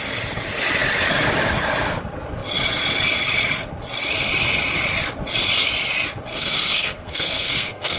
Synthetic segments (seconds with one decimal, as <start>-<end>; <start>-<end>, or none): 6.3-8.0